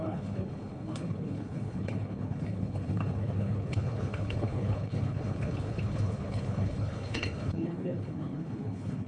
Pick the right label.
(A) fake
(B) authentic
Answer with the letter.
A